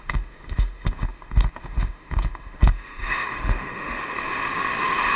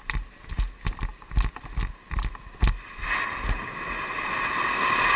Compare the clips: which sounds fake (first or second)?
first